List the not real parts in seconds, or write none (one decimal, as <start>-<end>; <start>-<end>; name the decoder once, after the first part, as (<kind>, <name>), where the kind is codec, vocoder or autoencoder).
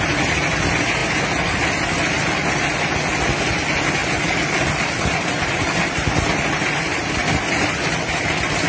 none